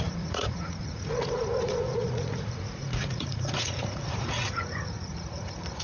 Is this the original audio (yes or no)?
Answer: no